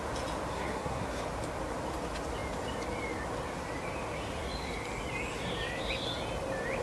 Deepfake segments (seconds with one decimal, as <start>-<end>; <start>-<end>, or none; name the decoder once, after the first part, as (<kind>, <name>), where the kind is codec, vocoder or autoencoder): 0.5-1.2 (codec, SNAC)